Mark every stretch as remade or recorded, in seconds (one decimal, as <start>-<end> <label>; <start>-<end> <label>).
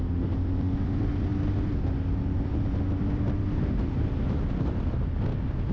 0.0-5.7 recorded